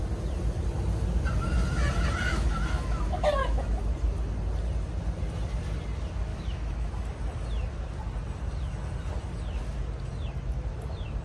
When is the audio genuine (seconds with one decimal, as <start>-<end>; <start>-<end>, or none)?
0.0-2.3; 3.8-6.3; 6.9-11.2

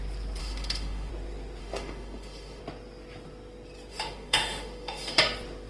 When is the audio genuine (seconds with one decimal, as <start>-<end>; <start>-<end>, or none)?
0.0-0.4; 1.1-1.6; 2.6-3.9; 5.2-5.7

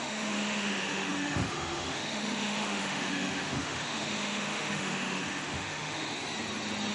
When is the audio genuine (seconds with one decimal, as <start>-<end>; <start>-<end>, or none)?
6.2-6.9

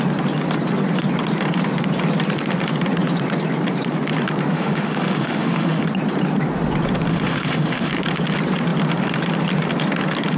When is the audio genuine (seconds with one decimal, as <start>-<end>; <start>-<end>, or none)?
0.0-4.5; 5.8-7.1; 7.9-10.4

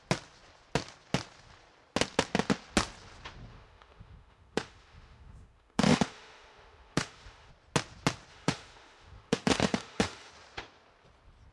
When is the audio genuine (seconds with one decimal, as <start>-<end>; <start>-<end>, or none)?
0.0-3.5; 7.5-8.3; 10.3-11.5